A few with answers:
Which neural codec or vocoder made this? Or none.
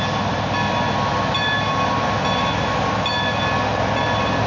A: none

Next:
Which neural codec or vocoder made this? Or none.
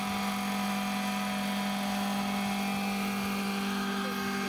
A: none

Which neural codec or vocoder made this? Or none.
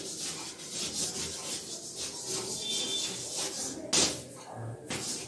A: none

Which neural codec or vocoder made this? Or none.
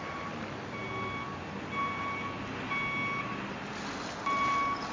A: none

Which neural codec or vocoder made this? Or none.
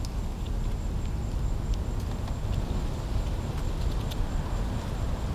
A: none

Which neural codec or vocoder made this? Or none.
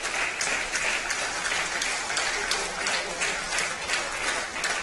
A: none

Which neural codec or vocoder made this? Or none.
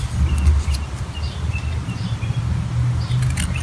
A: none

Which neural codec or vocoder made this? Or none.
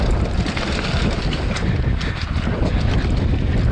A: none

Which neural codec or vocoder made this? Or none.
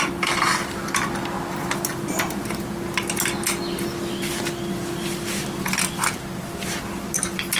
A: none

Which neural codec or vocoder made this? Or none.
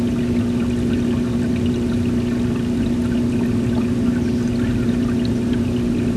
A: none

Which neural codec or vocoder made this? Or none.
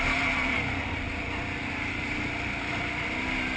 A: vocoder, BigVGAN v2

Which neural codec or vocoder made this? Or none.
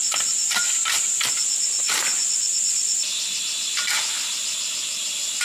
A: none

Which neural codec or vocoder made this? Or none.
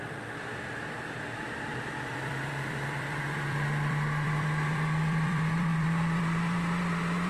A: vocoder, BigVGAN v2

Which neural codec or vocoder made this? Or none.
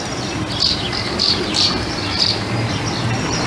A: vocoder, BigVGAN v2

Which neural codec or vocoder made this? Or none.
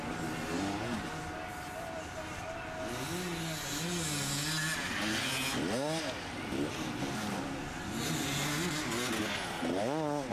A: none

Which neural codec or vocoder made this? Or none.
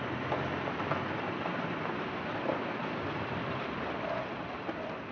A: vocoder, BigVGAN v2